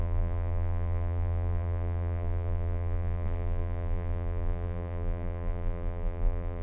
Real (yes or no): no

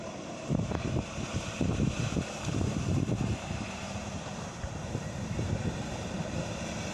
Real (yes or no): no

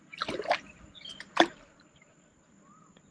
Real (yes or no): yes